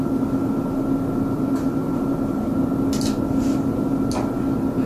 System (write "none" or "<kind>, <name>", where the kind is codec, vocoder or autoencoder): none